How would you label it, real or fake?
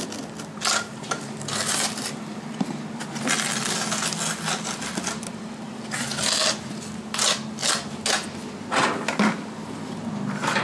real